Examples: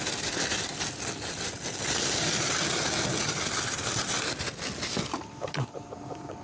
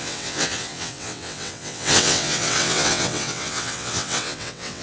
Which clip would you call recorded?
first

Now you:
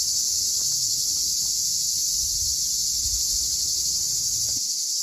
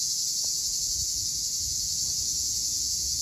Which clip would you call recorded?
first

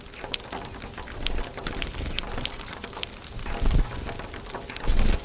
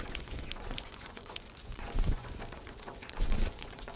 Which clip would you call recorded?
first